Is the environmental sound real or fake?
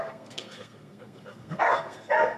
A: fake